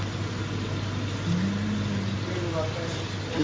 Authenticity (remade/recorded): recorded